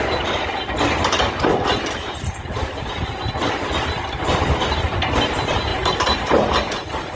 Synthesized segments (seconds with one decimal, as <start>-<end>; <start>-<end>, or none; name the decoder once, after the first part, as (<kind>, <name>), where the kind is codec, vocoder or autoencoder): 1.5-3.1 (vocoder, BigVGAN v2); 5.7-7.2